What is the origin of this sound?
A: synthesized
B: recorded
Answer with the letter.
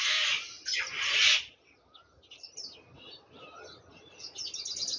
B